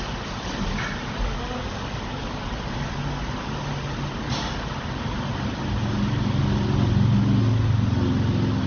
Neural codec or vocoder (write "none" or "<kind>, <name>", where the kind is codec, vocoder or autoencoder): none